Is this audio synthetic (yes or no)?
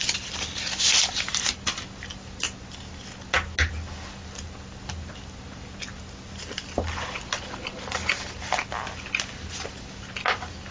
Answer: no